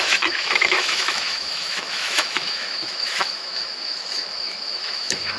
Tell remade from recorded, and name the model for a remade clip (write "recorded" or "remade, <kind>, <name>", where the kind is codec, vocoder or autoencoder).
remade, autoencoder, DAC-VAE